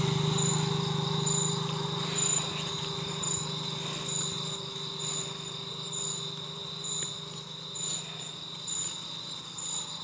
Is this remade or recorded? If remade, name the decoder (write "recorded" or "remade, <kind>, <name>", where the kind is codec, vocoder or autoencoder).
recorded